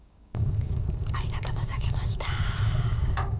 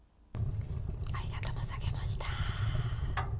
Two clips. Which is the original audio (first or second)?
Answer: second